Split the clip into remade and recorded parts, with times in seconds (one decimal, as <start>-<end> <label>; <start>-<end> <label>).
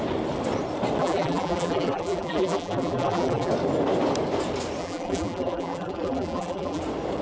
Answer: 0.0-1.0 recorded; 1.0-3.5 remade; 3.5-4.8 recorded; 4.8-6.8 remade; 6.8-7.2 recorded